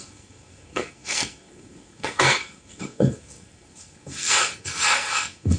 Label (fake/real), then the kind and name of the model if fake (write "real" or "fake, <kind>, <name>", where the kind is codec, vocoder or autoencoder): fake, codec, SNAC